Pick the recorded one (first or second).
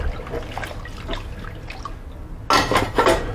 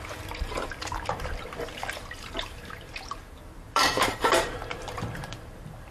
first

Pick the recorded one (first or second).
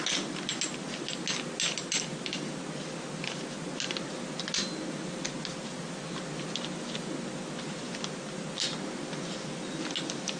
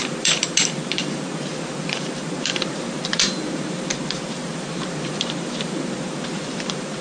first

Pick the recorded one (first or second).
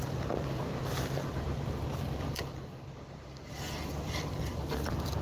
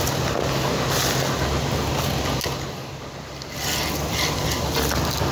second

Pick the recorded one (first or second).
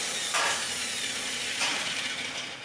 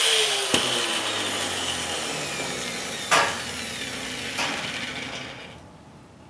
second